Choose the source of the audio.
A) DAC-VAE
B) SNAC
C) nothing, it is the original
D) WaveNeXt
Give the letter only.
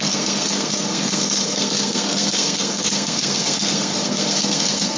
B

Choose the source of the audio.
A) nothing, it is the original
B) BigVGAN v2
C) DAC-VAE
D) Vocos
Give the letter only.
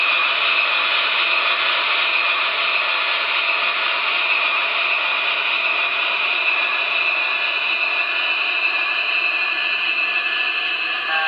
B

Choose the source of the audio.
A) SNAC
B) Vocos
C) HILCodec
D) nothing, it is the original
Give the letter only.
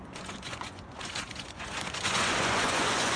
B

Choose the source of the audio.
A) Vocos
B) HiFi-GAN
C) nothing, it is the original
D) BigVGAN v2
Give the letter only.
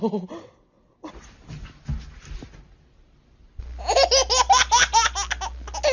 C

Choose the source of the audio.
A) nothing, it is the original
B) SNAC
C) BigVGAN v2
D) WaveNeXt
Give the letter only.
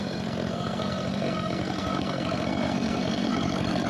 B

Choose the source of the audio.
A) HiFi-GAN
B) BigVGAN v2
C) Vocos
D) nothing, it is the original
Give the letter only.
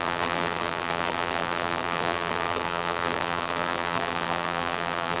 B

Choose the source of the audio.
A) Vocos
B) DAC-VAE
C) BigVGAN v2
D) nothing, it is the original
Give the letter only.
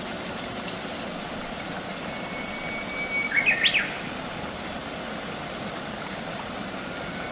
D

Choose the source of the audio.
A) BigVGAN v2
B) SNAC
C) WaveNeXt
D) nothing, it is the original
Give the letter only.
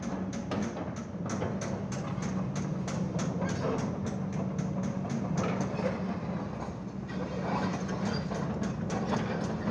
D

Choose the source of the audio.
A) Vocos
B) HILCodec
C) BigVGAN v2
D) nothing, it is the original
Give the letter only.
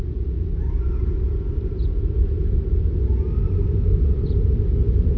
D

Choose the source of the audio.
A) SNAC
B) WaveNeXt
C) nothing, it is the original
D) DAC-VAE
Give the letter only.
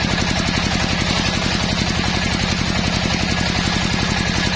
C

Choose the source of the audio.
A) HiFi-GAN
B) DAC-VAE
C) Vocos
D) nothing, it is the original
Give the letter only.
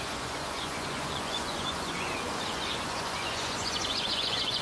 C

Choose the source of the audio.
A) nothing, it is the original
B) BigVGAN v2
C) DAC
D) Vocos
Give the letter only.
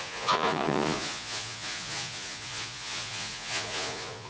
D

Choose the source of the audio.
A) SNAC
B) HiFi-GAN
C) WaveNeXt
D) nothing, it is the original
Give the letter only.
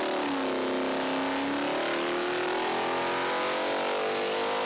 D